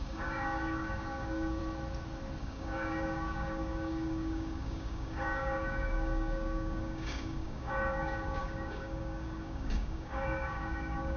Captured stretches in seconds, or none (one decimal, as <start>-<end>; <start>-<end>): 1.6-2.4